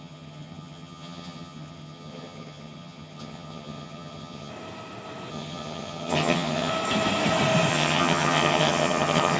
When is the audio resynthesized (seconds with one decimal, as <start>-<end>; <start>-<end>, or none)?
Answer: 0.0-4.5; 5.3-6.7; 7.7-9.4